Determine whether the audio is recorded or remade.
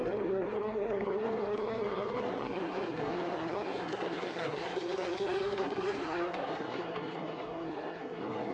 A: remade